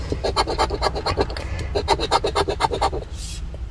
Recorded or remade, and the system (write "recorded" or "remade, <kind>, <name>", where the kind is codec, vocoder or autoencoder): recorded